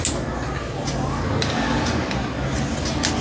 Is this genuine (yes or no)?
yes